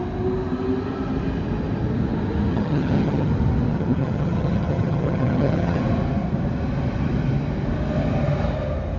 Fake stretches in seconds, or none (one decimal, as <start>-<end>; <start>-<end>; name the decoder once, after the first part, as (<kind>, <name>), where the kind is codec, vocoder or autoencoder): 2.5-3.3 (vocoder, HiFi-GAN); 3.7-5.8